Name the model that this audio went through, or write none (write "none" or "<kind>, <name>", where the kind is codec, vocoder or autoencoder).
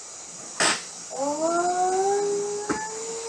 none